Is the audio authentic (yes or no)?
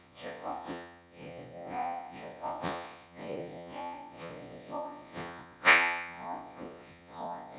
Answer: no